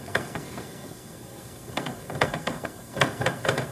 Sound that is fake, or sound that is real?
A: fake